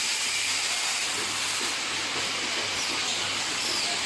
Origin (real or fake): real